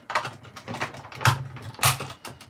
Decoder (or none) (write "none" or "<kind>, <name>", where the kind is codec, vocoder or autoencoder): none